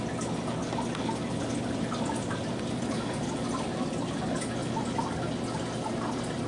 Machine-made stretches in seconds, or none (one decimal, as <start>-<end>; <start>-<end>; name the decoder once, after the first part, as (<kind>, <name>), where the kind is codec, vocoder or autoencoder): none